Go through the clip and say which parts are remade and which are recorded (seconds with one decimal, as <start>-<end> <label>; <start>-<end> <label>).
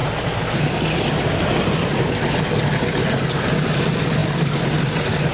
0.0-5.3 recorded